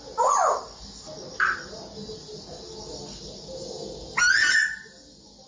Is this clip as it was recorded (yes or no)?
yes